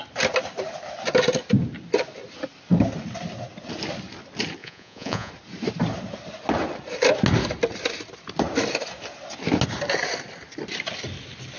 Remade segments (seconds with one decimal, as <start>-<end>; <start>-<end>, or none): 4.6-5.3